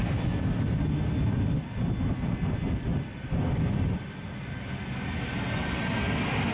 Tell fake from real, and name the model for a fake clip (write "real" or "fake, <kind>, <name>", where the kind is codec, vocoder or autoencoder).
real